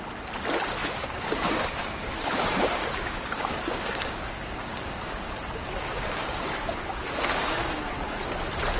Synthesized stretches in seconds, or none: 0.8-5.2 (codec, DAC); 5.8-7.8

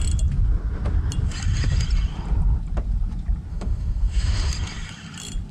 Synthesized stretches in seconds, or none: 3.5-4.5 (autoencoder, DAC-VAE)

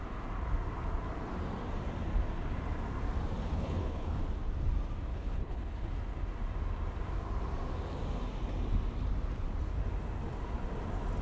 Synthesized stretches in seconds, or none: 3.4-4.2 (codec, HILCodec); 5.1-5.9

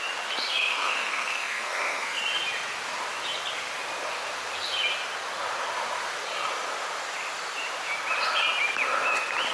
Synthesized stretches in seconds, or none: 0.7-2.2 (codec, SNAC)